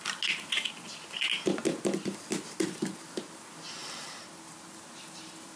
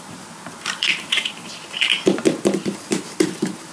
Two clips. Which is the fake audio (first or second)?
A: second